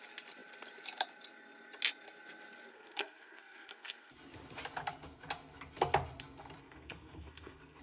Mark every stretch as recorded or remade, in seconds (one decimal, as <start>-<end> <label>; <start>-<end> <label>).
0.0-2.7 recorded; 2.7-4.1 remade; 4.1-6.6 recorded; 6.6-7.8 remade